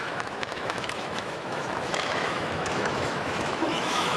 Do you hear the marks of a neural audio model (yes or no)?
yes